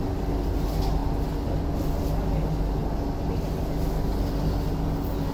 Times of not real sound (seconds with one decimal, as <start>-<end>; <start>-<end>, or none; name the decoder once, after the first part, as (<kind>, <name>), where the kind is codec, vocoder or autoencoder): none